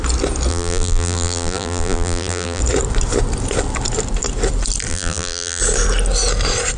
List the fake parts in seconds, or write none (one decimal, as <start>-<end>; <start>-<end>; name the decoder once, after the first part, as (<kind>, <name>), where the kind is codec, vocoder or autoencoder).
0.5-2.6 (vocoder, BigVGAN v2); 4.9-5.6